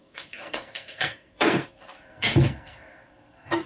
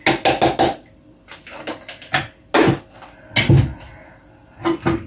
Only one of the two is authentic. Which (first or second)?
second